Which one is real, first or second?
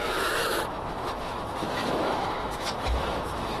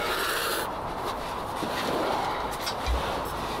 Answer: second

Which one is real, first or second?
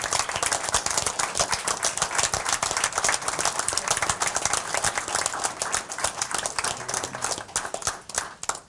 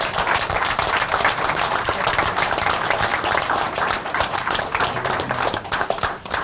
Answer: first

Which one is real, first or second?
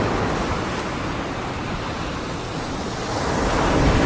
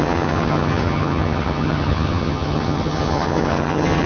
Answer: first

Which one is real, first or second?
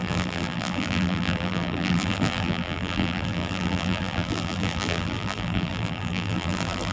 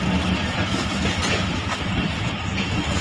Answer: second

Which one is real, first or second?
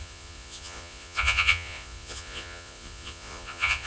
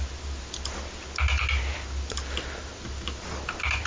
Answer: second